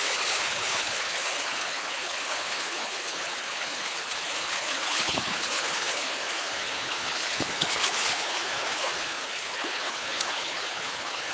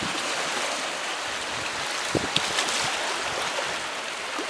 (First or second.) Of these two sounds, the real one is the second